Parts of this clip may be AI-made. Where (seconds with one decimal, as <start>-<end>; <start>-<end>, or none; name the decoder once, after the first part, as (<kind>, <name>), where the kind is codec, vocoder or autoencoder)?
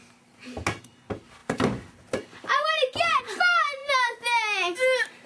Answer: 0.8-3.8 (vocoder, BigVGAN v2)